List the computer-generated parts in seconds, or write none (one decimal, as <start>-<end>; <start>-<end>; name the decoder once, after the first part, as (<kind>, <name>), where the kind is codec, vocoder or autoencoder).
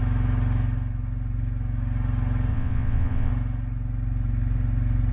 2.5-3.3 (vocoder, WaveNeXt)